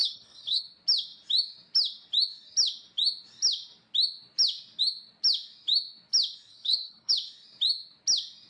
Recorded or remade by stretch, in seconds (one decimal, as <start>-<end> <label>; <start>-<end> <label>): 0.0-0.6 remade; 0.6-6.5 recorded; 6.5-7.1 remade; 7.1-8.5 recorded